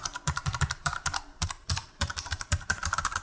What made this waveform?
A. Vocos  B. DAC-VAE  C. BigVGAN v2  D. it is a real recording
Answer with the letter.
C